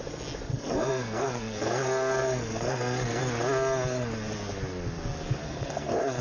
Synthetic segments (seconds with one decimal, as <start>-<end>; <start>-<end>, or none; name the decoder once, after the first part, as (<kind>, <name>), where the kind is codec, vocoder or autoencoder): 0.5-3.2 (codec, SNAC); 5.4-6.2

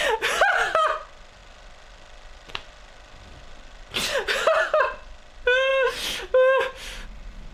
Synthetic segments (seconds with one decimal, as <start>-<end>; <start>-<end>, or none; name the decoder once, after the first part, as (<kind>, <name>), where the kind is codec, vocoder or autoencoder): none